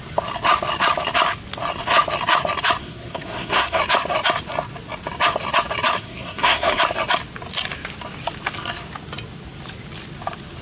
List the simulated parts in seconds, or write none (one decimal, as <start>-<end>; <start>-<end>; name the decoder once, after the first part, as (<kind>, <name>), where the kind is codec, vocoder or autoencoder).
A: 2.8-3.8 (codec, SNAC); 6.0-6.8